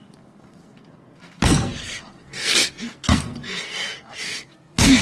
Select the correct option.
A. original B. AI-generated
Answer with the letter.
B